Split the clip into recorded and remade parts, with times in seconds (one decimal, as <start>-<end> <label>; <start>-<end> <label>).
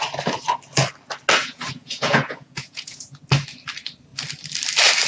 0.0-1.4 recorded; 1.4-3.2 remade; 3.2-5.1 recorded